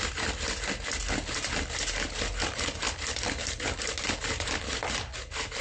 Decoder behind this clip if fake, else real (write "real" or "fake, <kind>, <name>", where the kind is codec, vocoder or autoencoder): real